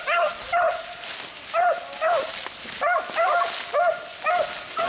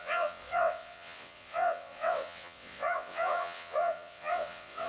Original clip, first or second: first